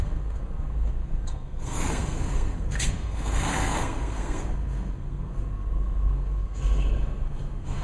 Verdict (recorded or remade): remade